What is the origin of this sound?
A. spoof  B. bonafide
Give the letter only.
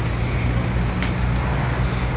B